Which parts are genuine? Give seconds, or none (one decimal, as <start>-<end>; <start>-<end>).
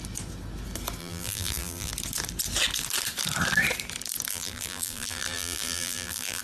0.0-1.0; 1.9-4.3